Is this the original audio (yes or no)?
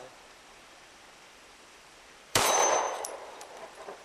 no